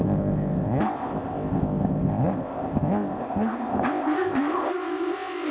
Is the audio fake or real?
fake